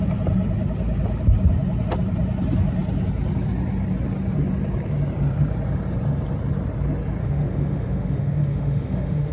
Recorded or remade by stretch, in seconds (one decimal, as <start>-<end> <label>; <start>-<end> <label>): 0.0-7.2 recorded; 7.2-9.3 remade